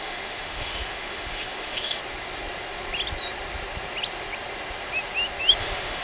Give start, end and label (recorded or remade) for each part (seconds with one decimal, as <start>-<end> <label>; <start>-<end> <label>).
0.0-2.0 remade; 2.0-5.6 recorded; 5.6-6.0 remade